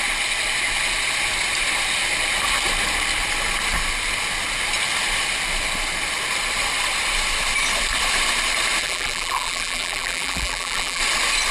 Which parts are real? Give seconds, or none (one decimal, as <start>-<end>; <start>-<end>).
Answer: 0.0-8.8; 11.0-11.5